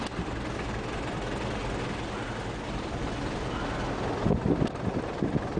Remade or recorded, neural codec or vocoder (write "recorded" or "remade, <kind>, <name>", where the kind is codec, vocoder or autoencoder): recorded